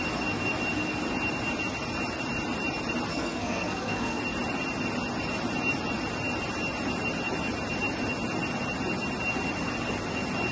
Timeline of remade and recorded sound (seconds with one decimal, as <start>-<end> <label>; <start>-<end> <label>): 0.0-3.1 recorded; 3.1-4.2 remade; 4.2-10.5 recorded